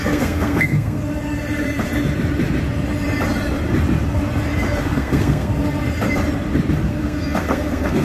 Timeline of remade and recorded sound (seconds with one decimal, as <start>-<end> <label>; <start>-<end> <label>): 0.0-1.0 remade; 1.0-4.8 recorded; 4.8-5.5 remade; 5.5-6.9 recorded; 6.9-8.0 remade